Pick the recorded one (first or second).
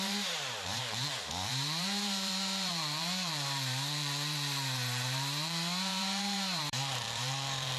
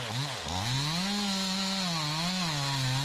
second